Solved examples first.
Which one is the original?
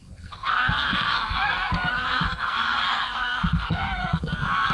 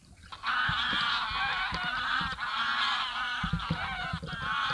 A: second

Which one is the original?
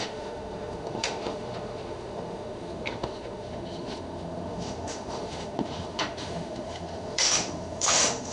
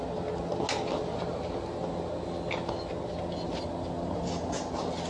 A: second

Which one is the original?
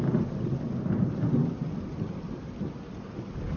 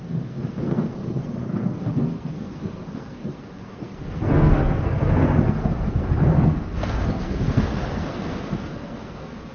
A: first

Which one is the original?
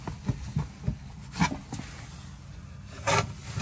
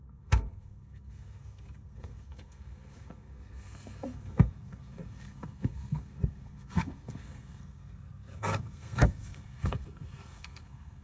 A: first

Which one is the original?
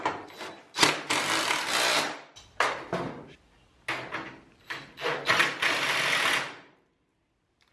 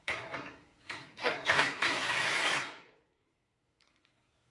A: first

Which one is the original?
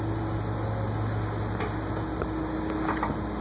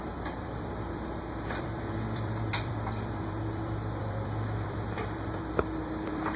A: first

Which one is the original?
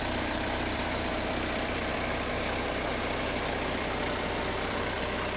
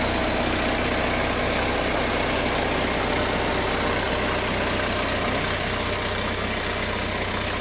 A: second